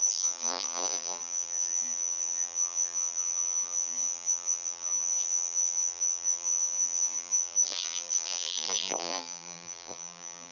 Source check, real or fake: fake